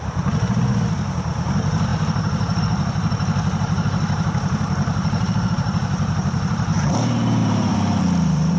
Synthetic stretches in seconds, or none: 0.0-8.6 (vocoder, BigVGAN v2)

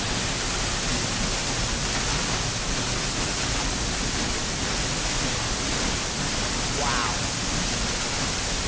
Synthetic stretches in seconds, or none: none

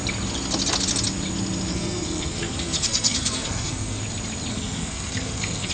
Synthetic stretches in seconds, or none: 1.7-4.0 (codec, SNAC); 4.5-5.7

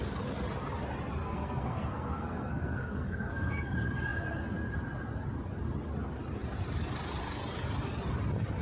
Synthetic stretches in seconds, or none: 1.2-3.5 (codec, SNAC)

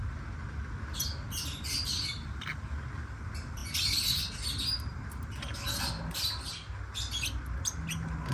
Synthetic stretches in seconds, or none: none